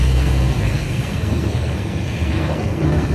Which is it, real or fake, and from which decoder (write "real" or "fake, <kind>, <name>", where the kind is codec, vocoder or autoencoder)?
fake, codec, SNAC